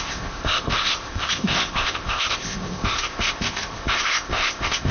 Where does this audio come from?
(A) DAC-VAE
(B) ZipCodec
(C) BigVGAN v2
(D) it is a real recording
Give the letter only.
B